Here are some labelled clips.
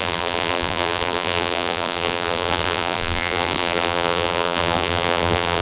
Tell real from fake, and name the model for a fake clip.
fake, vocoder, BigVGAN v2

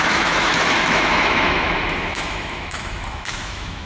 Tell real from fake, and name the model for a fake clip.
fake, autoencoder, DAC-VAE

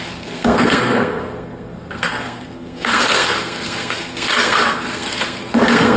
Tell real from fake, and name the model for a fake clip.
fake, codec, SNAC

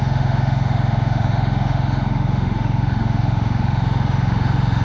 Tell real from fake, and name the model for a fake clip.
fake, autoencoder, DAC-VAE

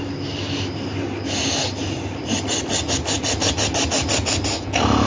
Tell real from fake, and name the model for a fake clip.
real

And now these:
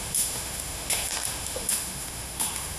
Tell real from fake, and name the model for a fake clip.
fake, autoencoder, DAC-VAE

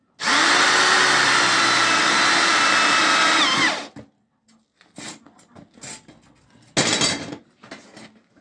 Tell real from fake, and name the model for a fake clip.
real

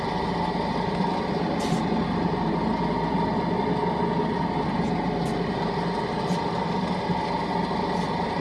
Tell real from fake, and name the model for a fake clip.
real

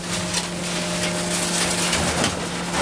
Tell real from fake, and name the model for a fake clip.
real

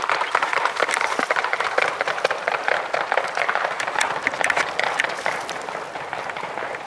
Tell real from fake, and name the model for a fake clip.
real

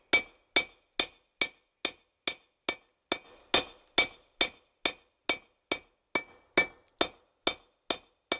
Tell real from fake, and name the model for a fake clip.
real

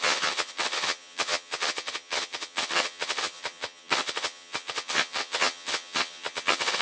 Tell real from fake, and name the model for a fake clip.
fake, vocoder, HiFi-GAN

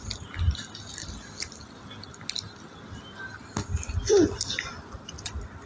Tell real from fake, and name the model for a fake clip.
real